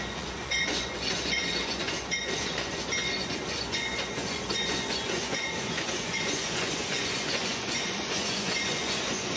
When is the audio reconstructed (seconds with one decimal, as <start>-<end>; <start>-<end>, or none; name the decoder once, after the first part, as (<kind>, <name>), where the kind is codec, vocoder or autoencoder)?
0.0-9.4 (vocoder, Vocos)